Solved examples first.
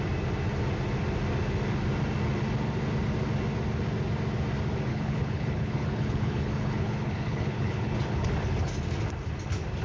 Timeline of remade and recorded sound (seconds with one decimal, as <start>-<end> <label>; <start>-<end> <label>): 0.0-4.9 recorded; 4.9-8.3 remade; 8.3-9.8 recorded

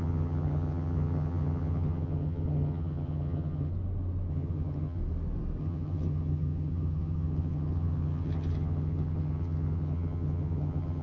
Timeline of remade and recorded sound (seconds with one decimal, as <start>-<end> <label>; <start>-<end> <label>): 0.0-3.7 remade; 3.7-4.3 recorded; 4.3-5.0 remade; 5.0-5.6 recorded; 5.6-11.0 remade

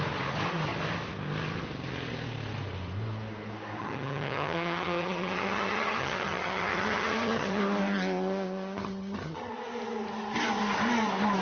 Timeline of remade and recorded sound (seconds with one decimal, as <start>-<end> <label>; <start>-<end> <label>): 0.0-3.8 recorded; 3.8-7.6 remade; 7.6-8.8 recorded; 8.8-9.5 remade; 9.5-11.4 recorded

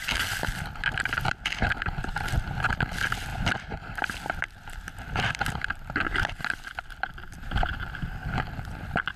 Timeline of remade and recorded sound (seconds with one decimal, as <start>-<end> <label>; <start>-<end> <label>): 0.0-9.2 remade

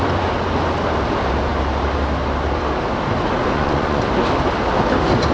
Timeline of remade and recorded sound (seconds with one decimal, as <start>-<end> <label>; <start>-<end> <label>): 0.0-3.4 recorded; 3.4-4.0 remade; 4.0-5.3 recorded

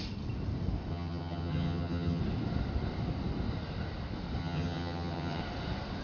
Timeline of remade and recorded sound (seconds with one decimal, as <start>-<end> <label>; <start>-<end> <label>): 0.0-0.9 recorded; 0.9-2.2 remade; 2.2-4.4 recorded; 4.4-5.4 remade; 5.4-6.0 recorded